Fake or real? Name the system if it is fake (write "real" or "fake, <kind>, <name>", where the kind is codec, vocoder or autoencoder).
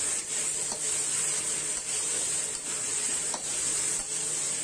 real